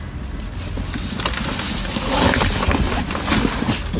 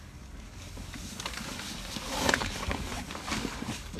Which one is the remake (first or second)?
second